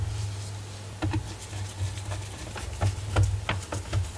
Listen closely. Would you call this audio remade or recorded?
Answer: recorded